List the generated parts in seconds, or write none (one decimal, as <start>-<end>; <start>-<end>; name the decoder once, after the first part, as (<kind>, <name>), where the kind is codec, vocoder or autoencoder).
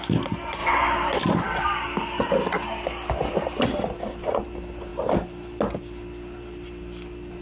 none